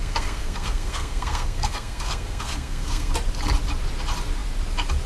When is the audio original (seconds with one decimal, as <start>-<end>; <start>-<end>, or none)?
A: 3.1-5.1